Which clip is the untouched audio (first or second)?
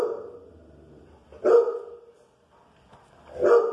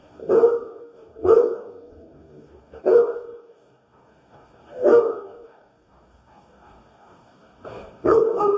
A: first